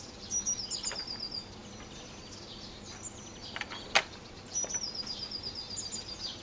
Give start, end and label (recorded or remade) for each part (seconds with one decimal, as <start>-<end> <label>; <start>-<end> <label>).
0.0-6.4 recorded

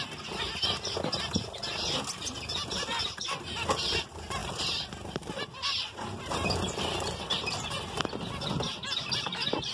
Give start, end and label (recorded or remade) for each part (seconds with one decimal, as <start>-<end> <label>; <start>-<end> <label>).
0.0-4.4 recorded; 4.4-5.3 remade; 5.3-9.7 recorded

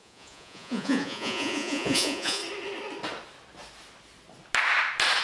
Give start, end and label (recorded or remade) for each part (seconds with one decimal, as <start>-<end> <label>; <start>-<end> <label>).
0.0-2.4 remade; 2.4-5.2 recorded

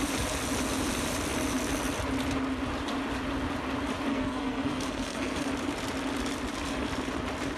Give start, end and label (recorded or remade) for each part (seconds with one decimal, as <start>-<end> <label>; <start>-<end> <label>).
0.0-4.1 recorded; 4.1-5.5 remade; 5.5-7.6 recorded

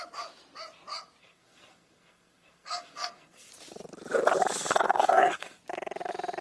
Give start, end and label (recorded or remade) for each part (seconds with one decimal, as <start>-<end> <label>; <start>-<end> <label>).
0.0-1.2 recorded; 1.2-3.5 remade; 3.5-4.5 recorded; 4.5-5.6 remade; 5.6-6.4 recorded

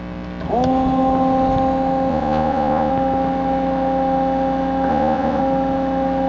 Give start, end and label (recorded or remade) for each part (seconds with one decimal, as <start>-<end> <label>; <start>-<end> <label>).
0.0-2.1 recorded; 2.1-2.9 remade; 2.9-4.9 recorded; 4.9-5.4 remade; 5.4-6.3 recorded